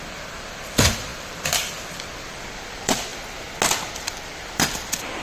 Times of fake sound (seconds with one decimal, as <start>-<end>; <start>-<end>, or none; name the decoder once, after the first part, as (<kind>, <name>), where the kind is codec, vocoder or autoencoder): 0.0-3.1 (vocoder, BigVGAN v2); 3.9-5.2